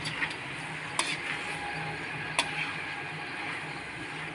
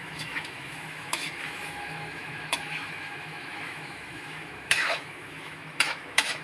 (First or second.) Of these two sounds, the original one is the first